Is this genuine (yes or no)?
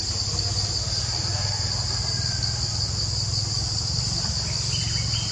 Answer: yes